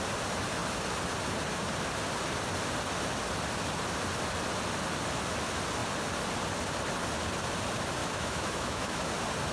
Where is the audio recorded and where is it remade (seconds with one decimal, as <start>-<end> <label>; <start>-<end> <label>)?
0.0-8.0 recorded; 8.0-9.1 remade; 9.1-9.5 recorded